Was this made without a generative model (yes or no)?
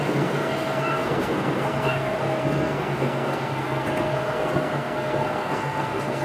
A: no